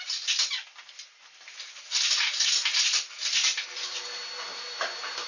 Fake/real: real